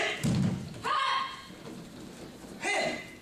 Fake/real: real